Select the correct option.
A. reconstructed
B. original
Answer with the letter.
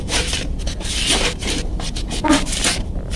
A